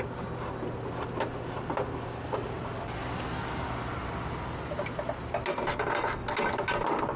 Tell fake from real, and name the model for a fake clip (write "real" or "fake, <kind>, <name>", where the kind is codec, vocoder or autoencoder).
real